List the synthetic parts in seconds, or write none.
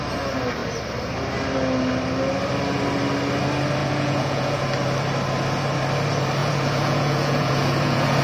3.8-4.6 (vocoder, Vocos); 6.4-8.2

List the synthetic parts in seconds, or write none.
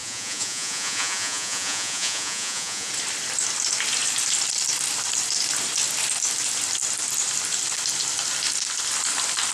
0.0-2.9 (vocoder, Vocos)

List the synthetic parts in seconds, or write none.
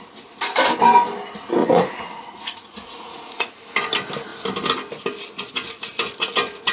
1.6-3.5 (vocoder, Vocos)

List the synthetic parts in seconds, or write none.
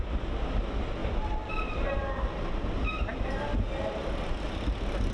none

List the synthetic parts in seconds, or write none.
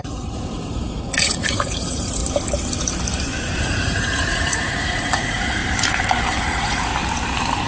0.0-2.2 (vocoder, Vocos); 3.6-5.6; 6.4-6.9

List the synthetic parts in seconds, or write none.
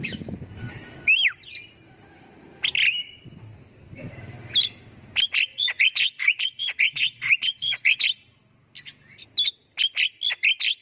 5.5-8.0 (vocoder, Vocos)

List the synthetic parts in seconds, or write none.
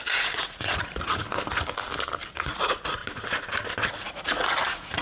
0.0-1.2 (vocoder, Vocos); 2.3-3.0; 3.9-5.0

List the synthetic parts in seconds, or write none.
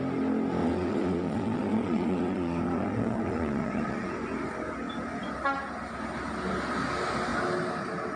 0.6-4.1 (vocoder, Vocos)